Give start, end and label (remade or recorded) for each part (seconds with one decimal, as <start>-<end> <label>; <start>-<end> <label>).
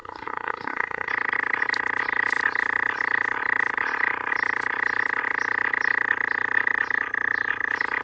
0.0-1.1 remade; 1.1-8.0 recorded